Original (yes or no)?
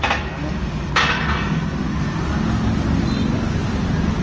yes